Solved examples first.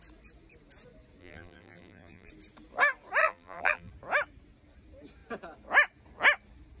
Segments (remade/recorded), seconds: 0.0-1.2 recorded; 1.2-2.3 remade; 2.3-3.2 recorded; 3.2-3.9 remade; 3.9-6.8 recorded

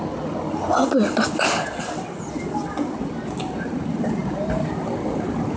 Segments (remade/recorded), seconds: 0.0-5.6 recorded